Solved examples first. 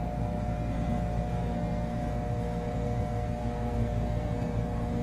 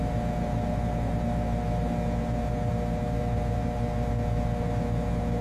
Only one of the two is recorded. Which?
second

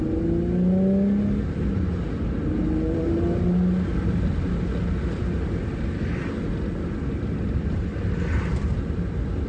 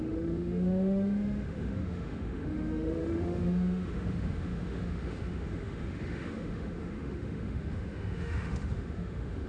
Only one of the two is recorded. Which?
first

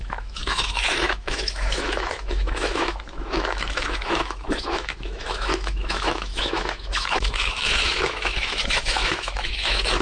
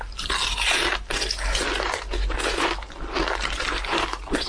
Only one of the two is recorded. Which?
second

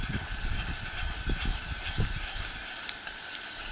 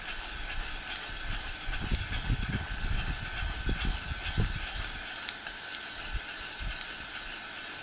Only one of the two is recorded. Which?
second